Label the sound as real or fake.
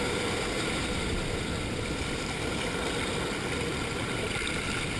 fake